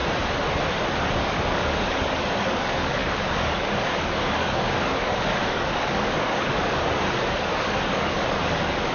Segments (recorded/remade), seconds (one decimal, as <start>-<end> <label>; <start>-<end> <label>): 0.0-1.0 recorded; 1.0-8.9 remade